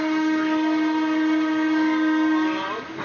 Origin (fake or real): real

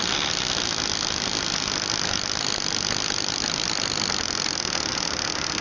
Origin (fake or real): real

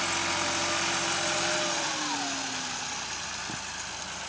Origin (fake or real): real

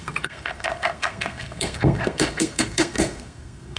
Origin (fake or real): fake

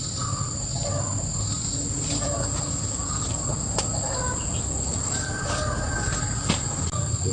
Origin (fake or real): real